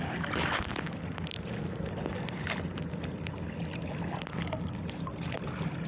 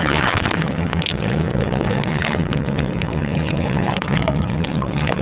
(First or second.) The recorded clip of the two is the first